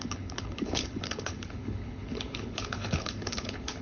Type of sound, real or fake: fake